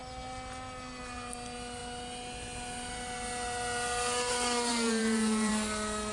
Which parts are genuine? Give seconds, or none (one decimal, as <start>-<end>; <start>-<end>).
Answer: 0.0-4.7; 5.5-6.1